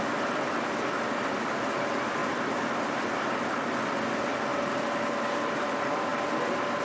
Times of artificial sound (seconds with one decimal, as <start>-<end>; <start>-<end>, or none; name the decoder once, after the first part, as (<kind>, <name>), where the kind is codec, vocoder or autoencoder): none